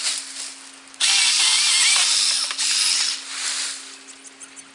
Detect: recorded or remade recorded